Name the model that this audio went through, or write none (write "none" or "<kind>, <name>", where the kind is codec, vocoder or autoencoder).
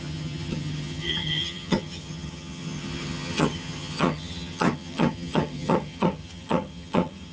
vocoder, HiFi-GAN